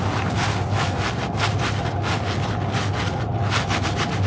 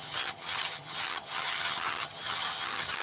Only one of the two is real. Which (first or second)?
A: first